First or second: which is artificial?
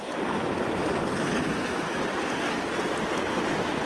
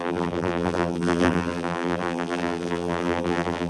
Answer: second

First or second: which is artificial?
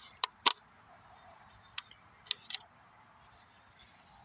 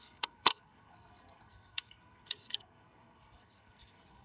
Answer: second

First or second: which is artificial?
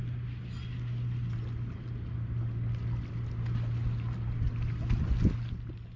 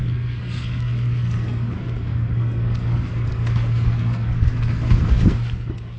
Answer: second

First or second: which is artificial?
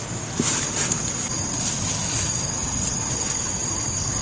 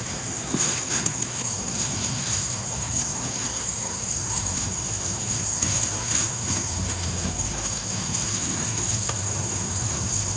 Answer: second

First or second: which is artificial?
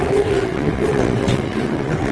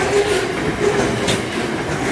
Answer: first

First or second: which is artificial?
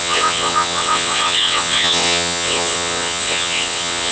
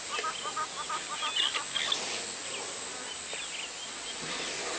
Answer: first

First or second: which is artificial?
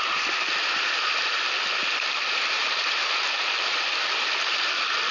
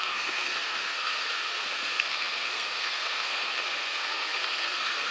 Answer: second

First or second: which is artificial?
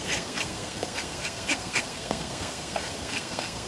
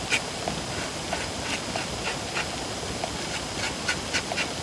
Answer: first